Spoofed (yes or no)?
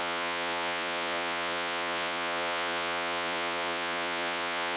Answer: yes